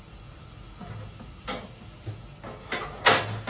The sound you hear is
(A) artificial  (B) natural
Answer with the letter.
B